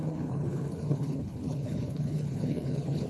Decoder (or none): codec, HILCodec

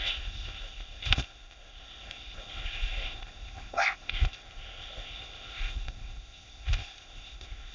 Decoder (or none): codec, ZipCodec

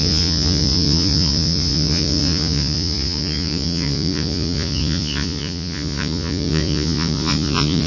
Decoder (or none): vocoder, Vocos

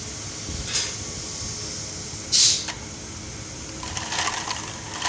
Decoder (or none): none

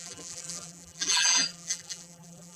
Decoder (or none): vocoder, BigVGAN v2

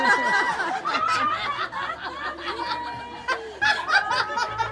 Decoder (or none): none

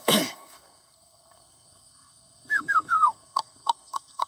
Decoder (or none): codec, SNAC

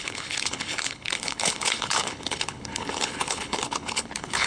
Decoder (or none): codec, HILCodec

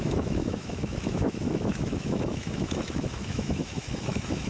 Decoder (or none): autoencoder, DAC-VAE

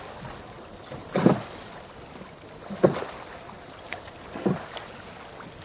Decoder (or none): none